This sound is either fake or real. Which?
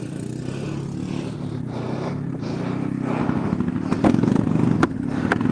real